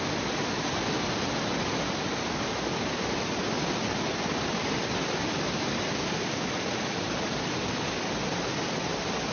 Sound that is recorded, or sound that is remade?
recorded